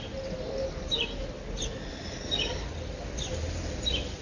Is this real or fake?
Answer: real